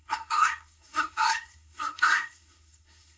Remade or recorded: remade